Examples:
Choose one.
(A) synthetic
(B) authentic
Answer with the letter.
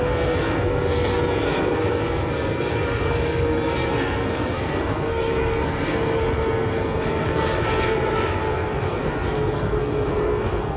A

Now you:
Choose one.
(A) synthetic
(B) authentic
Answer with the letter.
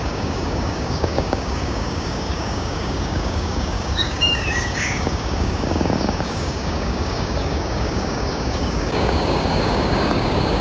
A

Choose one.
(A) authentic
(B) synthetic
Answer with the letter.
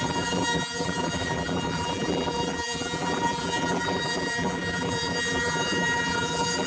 B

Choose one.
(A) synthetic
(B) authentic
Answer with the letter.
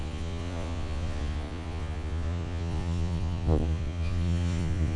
A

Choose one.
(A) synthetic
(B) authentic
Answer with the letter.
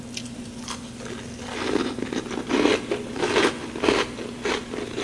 B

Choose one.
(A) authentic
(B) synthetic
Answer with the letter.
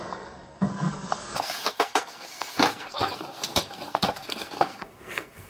B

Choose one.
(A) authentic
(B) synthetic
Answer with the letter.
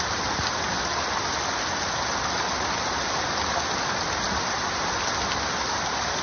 A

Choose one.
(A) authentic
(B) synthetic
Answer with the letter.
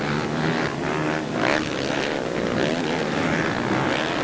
A